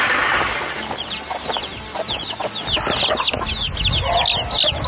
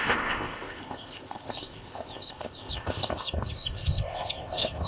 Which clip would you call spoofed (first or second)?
second